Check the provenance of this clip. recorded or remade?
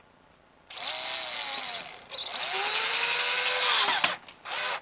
recorded